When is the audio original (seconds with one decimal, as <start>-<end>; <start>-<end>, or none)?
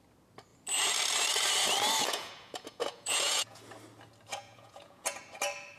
0.0-2.0; 3.6-4.3; 5.2-5.8